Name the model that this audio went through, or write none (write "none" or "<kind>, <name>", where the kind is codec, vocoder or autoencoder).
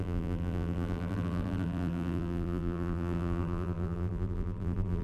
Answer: vocoder, BigVGAN v2